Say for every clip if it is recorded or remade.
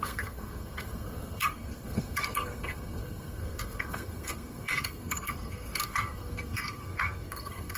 remade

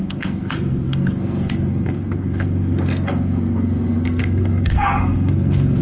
remade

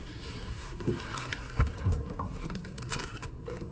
remade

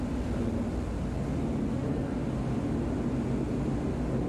recorded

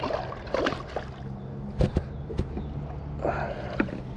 recorded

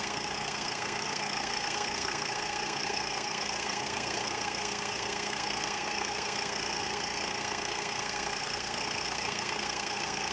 remade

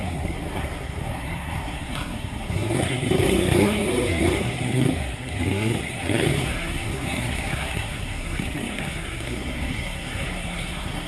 remade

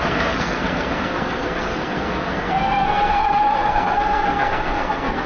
remade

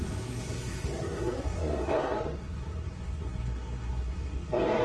remade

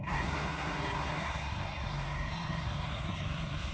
remade